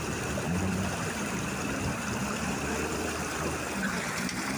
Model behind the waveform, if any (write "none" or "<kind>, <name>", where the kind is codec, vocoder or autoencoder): vocoder, BigVGAN v2